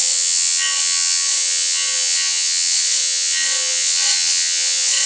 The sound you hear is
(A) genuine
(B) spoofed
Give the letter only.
B